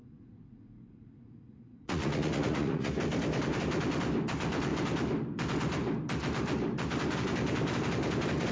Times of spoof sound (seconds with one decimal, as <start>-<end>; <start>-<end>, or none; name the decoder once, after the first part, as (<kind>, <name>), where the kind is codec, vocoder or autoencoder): 0.0-2.9 (vocoder, Vocos)